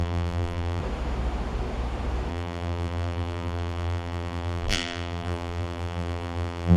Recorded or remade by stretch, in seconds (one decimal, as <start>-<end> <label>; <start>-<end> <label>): 0.0-0.8 remade; 0.8-2.3 recorded; 2.3-6.8 remade